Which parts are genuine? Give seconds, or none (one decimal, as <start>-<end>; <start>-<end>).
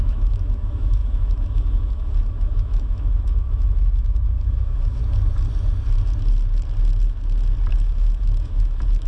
5.0-7.7